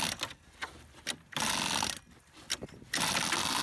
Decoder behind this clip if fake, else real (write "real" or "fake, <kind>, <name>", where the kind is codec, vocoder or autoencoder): real